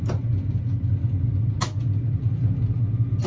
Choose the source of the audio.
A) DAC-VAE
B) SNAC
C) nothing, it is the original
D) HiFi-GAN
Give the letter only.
C